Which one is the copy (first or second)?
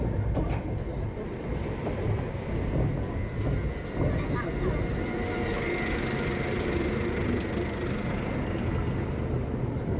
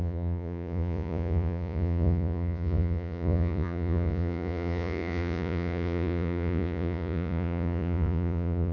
second